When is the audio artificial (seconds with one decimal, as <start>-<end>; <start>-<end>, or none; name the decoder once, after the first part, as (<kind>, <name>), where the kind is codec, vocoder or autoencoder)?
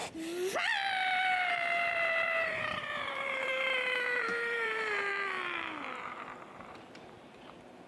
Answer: 1.5-5.1 (vocoder, BigVGAN v2); 6.5-7.9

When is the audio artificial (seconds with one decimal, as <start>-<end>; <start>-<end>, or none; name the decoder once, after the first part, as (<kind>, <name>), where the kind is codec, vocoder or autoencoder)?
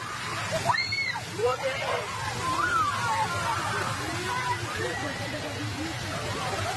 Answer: none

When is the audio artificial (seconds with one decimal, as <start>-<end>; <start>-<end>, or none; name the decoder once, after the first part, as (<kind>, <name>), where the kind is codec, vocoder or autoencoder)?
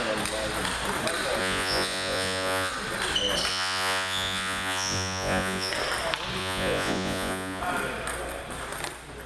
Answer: 1.4-2.7 (vocoder, Vocos); 3.5-5.7; 6.4-7.6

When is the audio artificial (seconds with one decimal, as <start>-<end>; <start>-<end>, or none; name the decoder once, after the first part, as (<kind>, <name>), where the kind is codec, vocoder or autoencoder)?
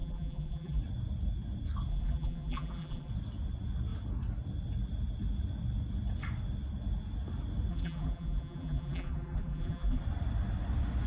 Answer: 0.0-0.8 (vocoder, BigVGAN v2); 1.9-3.1; 7.7-10.0